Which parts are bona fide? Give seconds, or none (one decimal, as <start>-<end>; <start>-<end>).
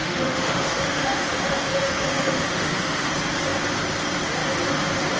3.1-5.2